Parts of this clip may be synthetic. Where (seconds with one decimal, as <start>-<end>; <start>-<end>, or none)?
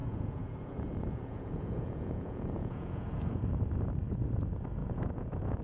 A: 0.0-3.4; 4.8-5.6